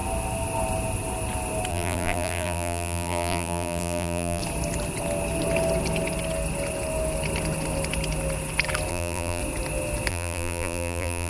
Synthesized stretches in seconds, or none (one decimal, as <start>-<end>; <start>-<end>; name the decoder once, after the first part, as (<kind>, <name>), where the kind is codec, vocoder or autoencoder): 1.7-4.4 (vocoder, BigVGAN v2); 8.9-9.4; 10.1-11.3